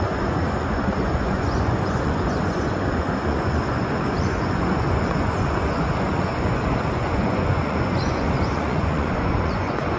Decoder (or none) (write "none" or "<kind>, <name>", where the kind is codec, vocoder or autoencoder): vocoder, Vocos